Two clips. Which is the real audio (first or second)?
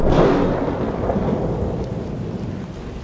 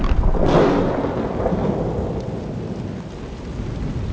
second